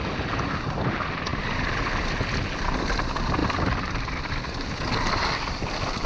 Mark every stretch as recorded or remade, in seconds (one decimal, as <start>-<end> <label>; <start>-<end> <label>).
0.0-1.3 recorded; 1.3-1.9 remade; 1.9-3.4 recorded; 3.4-4.9 remade; 4.9-6.1 recorded